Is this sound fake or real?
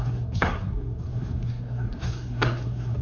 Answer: fake